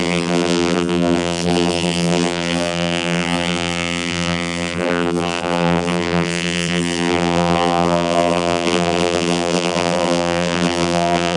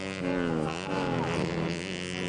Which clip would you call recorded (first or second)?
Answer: second